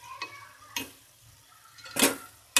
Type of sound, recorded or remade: recorded